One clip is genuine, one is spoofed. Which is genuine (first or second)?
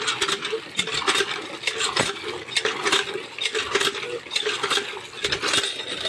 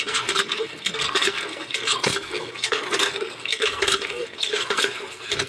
first